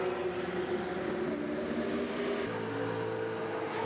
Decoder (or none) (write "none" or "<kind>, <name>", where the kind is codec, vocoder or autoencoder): none